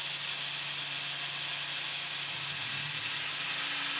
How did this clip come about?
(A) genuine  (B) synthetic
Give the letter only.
A